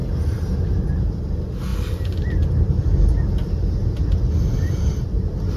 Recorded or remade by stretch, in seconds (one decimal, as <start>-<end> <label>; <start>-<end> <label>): 0.0-5.6 recorded